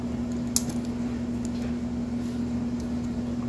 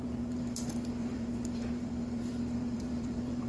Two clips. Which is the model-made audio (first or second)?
second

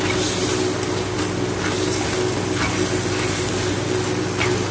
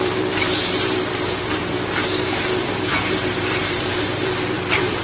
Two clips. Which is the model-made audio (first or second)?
second